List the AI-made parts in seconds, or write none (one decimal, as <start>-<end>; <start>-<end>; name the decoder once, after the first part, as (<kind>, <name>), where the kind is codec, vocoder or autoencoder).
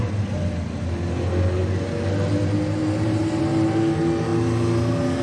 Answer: 2.8-3.4 (vocoder, BigVGAN v2)